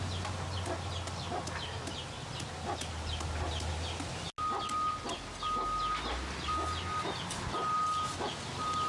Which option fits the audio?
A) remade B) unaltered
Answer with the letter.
B